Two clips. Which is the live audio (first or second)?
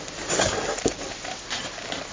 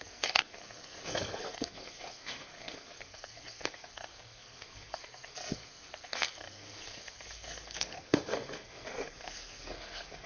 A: first